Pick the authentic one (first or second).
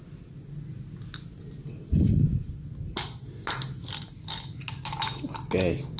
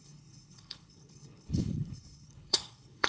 first